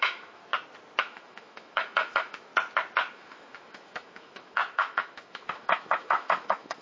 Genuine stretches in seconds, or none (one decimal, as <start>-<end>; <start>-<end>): 0.4-1.0; 2.5-3.1